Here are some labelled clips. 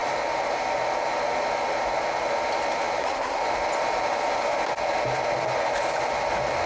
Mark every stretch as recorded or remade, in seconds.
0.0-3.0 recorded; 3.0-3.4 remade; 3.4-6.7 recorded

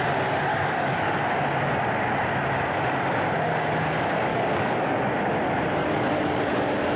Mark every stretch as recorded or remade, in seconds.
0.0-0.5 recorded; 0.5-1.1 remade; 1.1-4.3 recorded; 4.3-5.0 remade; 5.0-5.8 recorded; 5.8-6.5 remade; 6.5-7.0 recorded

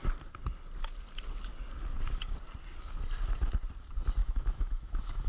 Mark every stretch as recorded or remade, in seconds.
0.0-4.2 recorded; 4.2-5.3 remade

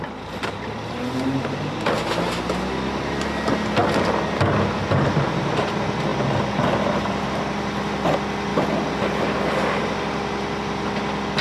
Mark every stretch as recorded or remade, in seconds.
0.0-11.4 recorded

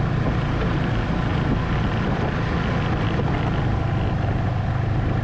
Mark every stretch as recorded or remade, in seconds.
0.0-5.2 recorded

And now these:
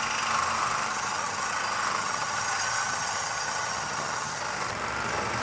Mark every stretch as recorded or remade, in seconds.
0.0-0.9 recorded; 0.9-1.5 remade; 1.5-2.0 recorded; 2.0-4.4 remade; 4.4-5.4 recorded

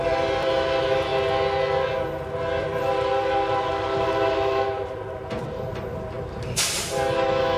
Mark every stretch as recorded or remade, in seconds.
0.0-1.1 remade; 1.1-2.6 recorded; 2.6-7.6 remade